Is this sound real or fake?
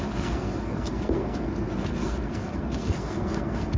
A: fake